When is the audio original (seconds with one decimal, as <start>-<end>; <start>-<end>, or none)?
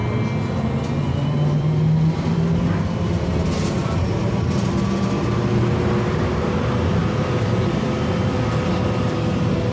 0.0-3.8; 5.5-7.0; 8.5-9.7